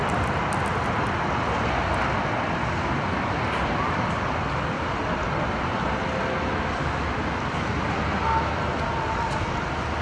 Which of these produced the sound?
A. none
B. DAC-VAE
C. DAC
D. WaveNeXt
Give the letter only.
A